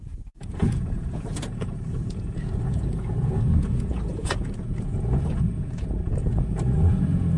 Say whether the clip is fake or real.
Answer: fake